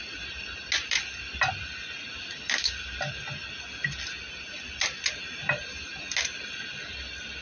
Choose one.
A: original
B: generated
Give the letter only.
A